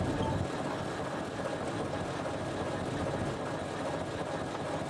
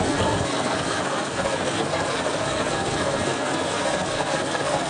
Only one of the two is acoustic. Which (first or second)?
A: first